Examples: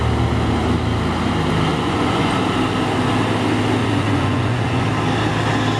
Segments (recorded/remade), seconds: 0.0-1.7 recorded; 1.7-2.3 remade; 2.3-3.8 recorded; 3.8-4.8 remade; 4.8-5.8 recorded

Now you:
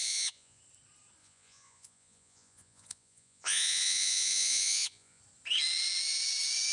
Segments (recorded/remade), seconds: 0.0-0.6 remade; 0.6-1.2 recorded; 1.2-5.2 remade; 5.2-6.7 recorded